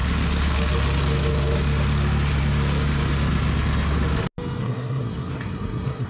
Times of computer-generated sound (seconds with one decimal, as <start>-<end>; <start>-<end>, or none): 4.6-6.1

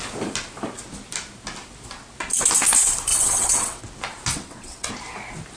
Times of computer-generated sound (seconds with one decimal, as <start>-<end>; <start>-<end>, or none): 3.1-3.8; 4.3-4.9